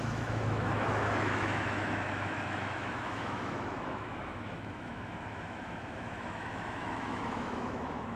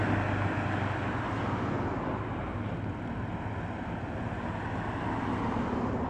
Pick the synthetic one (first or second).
first